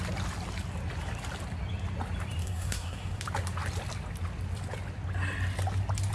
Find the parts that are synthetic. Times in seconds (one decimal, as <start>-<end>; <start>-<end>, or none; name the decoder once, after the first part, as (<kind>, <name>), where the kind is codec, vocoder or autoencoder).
2.4-3.2 (codec, SNAC)